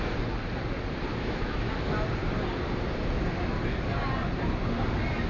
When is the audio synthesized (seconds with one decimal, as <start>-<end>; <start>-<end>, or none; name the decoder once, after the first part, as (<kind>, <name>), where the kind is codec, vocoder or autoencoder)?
1.1-1.7 (autoencoder, DAC-VAE)